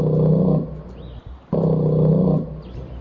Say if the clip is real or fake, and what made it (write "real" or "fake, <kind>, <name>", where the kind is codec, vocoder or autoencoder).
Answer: real